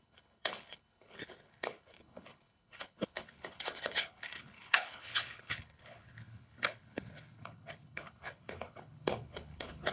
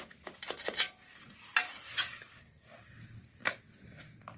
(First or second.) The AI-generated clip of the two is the first